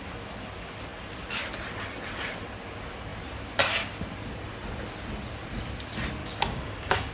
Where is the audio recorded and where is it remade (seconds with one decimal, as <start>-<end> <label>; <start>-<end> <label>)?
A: 0.0-6.2 recorded; 6.2-7.1 remade